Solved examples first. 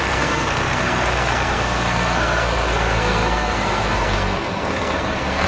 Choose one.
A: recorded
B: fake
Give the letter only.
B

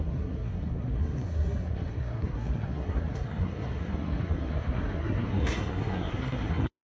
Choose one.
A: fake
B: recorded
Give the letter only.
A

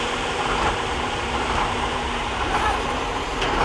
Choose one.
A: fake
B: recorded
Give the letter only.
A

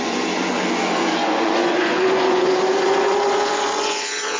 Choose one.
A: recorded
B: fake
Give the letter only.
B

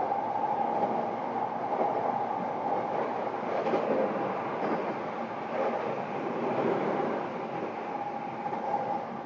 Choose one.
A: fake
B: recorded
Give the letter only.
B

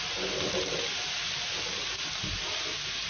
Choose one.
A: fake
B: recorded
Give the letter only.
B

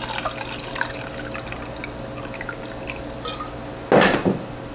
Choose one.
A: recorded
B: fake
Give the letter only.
A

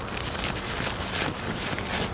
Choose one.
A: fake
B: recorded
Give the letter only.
B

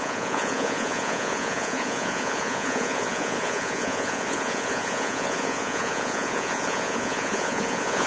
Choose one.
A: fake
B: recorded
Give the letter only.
A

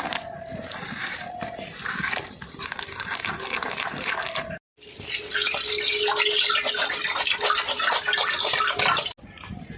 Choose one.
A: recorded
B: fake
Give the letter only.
A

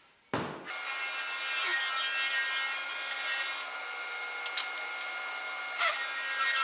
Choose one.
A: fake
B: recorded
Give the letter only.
B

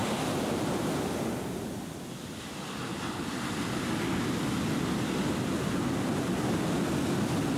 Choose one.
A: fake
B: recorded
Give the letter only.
B